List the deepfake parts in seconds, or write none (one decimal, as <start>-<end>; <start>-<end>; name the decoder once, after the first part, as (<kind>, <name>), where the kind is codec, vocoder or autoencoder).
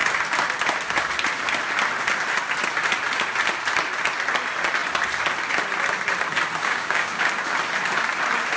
6.6-7.3 (codec, DAC)